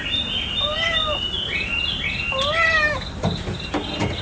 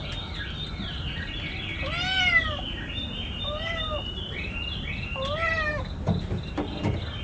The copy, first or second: second